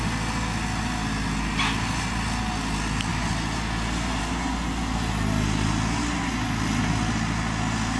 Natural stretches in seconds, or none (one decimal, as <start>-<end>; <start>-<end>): 0.0-8.0